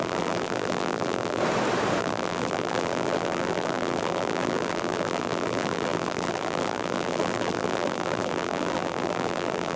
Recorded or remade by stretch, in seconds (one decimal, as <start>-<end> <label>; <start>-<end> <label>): 0.0-1.4 remade; 1.4-2.0 recorded; 2.0-9.8 remade